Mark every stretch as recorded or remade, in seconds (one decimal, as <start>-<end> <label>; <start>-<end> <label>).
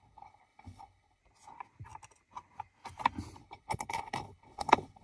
0.0-1.2 remade; 1.2-3.4 recorded; 3.4-5.0 remade